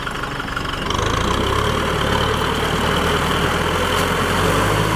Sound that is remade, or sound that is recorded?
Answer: recorded